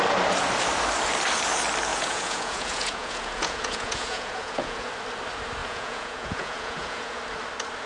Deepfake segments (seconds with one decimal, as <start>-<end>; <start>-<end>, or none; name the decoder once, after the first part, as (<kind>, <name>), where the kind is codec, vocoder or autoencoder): 1.9-4.9 (vocoder, Vocos); 5.6-7.2